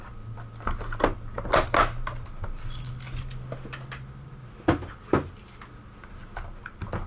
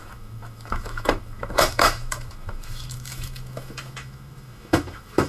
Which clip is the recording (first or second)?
first